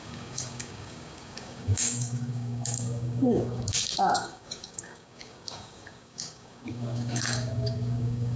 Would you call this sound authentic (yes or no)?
no